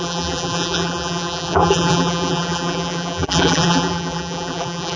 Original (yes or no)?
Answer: no